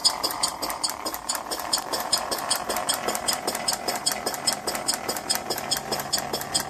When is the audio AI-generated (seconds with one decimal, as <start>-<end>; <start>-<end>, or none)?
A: 0.0-4.0